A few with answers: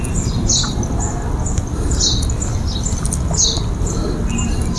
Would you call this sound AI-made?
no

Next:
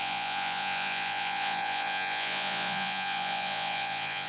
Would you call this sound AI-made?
yes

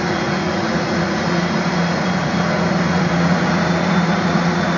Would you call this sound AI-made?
yes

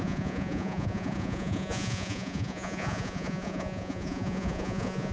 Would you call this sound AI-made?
yes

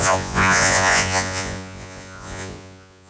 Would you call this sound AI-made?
yes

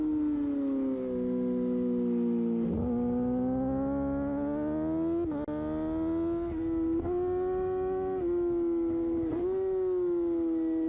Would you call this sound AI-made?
no